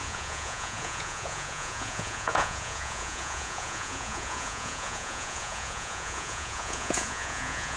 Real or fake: fake